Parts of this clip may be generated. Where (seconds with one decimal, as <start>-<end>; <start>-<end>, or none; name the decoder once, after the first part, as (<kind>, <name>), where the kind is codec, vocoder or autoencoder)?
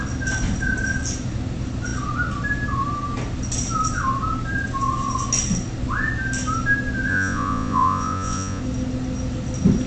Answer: 7.1-8.6 (vocoder, Vocos)